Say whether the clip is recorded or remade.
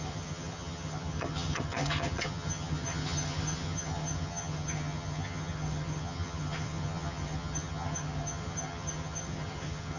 remade